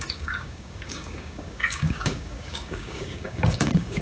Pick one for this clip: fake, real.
fake